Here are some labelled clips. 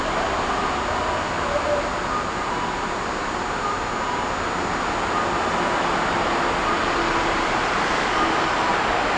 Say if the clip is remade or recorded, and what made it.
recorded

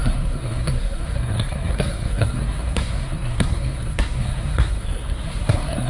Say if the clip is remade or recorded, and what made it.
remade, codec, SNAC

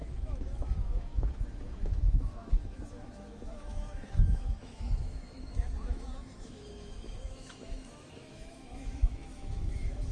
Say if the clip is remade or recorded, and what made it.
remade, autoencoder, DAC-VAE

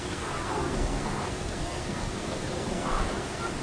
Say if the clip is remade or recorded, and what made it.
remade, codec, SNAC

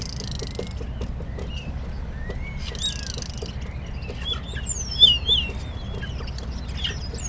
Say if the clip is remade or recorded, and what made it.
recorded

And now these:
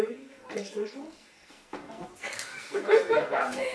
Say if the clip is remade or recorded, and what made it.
remade, codec, SNAC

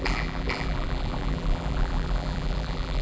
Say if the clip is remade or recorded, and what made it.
remade, vocoder, BigVGAN v2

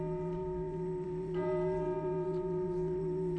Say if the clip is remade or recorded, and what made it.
remade, vocoder, BigVGAN v2